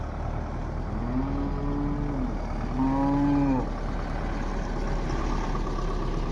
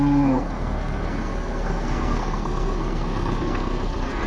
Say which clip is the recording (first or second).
first